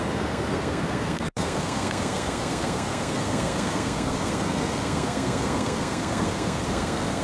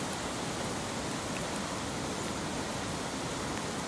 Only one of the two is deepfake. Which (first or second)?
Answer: first